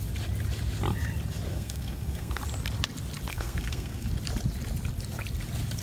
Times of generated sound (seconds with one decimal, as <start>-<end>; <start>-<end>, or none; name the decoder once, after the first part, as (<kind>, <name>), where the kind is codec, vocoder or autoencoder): 1.5-2.4 (codec, SNAC); 3.3-4.1